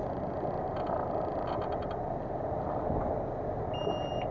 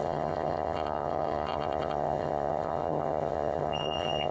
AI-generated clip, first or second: second